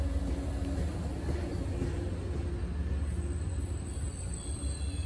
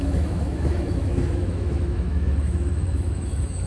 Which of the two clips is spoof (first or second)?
second